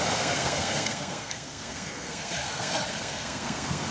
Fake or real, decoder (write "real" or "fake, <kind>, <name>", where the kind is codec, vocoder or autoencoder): fake, codec, SNAC